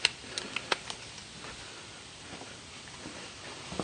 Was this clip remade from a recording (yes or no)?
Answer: no